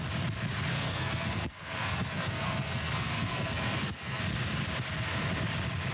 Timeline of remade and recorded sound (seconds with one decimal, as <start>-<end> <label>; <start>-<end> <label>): 0.0-0.7 recorded; 0.7-4.2 remade; 4.2-5.9 recorded

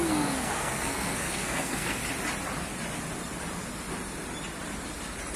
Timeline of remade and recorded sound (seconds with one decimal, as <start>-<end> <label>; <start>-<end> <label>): 0.0-2.0 remade; 2.0-5.4 recorded

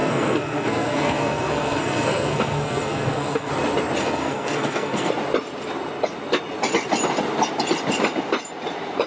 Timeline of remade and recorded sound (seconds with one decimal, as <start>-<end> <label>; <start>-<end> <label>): 0.0-3.5 remade; 3.5-4.0 recorded; 4.0-5.1 remade; 5.1-9.1 recorded

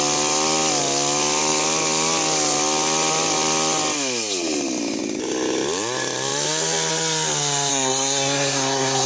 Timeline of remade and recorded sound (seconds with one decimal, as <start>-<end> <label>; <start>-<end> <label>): 0.0-7.7 recorded; 7.7-9.1 remade

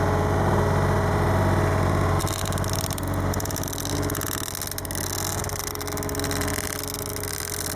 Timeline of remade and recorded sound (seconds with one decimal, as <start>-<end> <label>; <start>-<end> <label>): 0.0-7.8 recorded

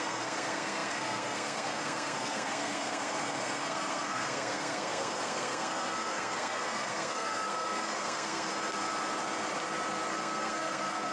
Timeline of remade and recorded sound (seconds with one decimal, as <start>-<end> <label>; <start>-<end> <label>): 0.0-8.5 remade; 8.5-10.1 recorded; 10.1-11.1 remade